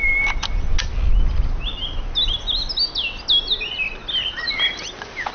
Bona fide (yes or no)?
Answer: yes